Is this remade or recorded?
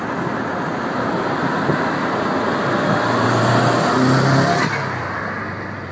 recorded